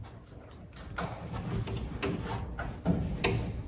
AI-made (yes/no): no